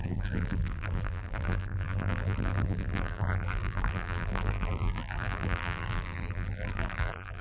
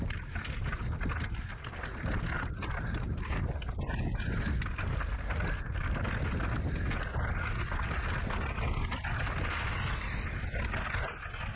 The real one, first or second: second